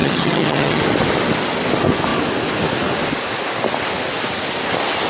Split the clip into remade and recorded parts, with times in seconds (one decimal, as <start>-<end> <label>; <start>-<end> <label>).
0.0-0.8 remade; 0.8-5.1 recorded

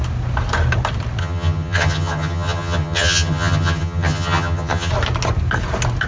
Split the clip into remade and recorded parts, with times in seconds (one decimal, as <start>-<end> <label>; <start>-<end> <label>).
0.0-1.2 recorded; 1.2-4.9 remade; 4.9-6.1 recorded

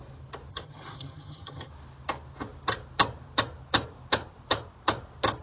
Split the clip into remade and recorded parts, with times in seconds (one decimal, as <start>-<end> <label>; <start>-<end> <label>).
0.0-0.5 recorded; 0.5-1.7 remade; 1.7-5.4 recorded

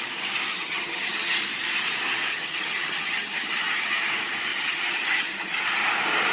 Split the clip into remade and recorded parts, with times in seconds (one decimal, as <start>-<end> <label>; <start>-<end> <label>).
0.0-0.5 recorded; 0.5-1.4 remade; 1.4-2.3 recorded; 2.3-4.1 remade; 4.1-4.5 recorded; 4.5-5.6 remade; 5.6-6.3 recorded

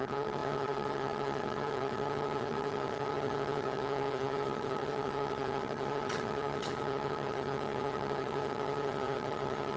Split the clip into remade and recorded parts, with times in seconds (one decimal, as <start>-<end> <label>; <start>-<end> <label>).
0.0-9.8 remade

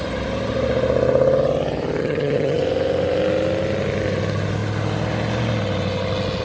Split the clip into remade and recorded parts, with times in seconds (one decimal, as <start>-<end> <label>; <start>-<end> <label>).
0.0-2.0 recorded; 2.0-2.6 remade; 2.6-6.4 recorded